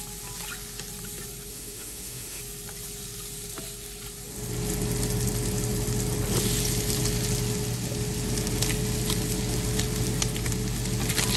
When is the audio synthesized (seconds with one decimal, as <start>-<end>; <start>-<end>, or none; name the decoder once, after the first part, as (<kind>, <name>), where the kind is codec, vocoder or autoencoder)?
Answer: 1.5-2.4 (autoencoder, DAC-VAE)